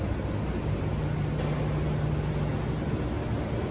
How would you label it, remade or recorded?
recorded